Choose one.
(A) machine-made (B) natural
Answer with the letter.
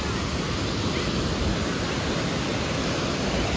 B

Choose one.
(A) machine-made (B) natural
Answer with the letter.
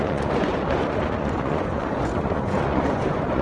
A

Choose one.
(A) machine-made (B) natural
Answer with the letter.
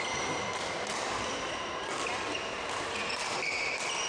B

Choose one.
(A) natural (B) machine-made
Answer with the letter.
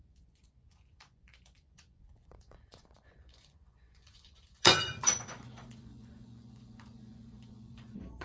B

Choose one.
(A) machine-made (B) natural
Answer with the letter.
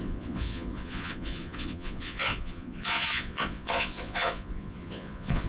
A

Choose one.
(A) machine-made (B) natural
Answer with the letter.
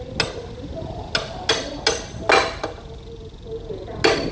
B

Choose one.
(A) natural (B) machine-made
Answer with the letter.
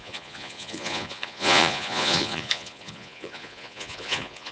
B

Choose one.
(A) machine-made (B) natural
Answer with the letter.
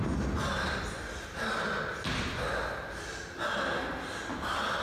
B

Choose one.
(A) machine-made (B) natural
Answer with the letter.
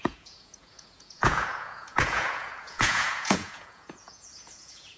A